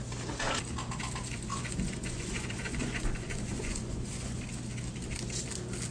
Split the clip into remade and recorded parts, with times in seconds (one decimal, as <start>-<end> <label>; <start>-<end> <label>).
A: 0.0-1.5 recorded; 1.5-4.4 remade; 4.4-5.9 recorded